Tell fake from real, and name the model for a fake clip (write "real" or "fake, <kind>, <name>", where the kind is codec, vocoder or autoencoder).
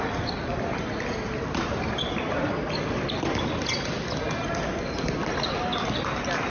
real